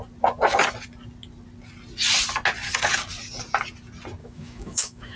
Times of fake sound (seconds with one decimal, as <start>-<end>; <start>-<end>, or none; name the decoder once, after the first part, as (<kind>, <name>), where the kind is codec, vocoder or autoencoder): 4.2-5.2 (autoencoder, DAC-VAE)